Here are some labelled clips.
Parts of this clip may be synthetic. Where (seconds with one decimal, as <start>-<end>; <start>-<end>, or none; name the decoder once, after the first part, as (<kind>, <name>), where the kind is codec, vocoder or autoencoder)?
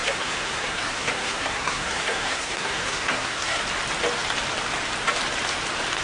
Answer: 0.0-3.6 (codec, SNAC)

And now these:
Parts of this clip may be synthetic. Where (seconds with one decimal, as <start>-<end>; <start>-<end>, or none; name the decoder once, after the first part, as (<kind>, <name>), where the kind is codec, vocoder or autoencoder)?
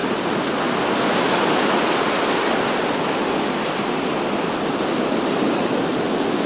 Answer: none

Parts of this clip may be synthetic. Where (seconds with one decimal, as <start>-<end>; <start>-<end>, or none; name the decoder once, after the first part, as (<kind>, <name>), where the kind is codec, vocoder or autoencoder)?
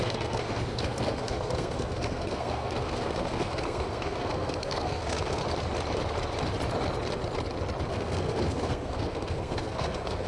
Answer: 0.0-5.4 (codec, SNAC); 7.9-10.3